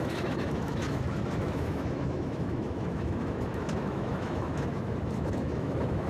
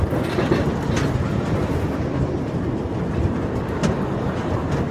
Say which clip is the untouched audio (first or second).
second